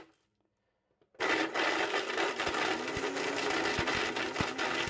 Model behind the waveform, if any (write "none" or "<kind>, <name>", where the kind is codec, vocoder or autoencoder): none